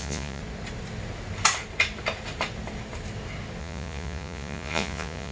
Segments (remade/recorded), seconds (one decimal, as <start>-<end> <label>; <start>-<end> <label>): 0.0-0.4 remade; 0.4-3.6 recorded; 3.6-5.3 remade